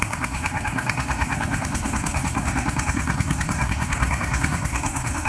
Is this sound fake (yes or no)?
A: yes